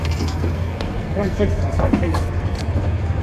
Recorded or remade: remade